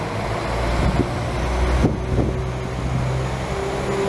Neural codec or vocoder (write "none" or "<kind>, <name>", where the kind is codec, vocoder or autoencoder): none